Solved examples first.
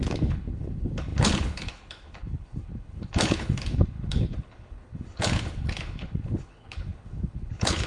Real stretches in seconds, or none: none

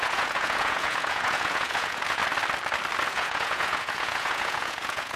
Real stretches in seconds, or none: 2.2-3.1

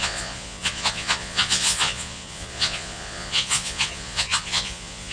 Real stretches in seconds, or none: none